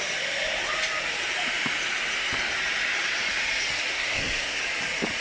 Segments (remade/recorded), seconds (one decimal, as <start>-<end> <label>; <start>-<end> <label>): 0.0-3.9 recorded; 3.9-4.6 remade; 4.6-5.2 recorded